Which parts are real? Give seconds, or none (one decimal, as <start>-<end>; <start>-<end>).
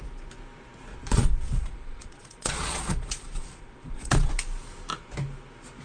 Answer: 0.0-0.9; 4.3-5.8